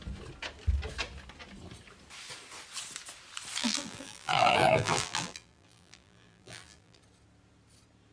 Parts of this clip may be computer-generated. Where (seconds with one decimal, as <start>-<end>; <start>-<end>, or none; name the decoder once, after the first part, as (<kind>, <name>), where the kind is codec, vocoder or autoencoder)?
3.6-7.0 (vocoder, BigVGAN v2)

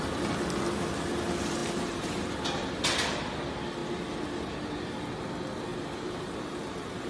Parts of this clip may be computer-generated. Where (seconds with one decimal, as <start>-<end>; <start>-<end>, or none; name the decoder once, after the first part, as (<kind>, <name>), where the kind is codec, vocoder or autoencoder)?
1.6-2.3 (vocoder, BigVGAN v2); 5.7-7.1

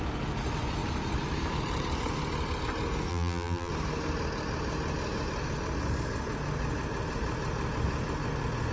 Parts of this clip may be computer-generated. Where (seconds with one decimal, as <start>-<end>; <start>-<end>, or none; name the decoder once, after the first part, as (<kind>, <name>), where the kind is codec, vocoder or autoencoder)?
3.1-3.7 (vocoder, BigVGAN v2)

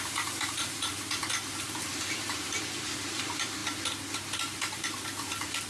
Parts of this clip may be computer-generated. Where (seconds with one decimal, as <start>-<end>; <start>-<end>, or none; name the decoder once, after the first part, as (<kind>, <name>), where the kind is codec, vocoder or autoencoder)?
0.0-1.2 (vocoder, BigVGAN v2); 1.9-3.6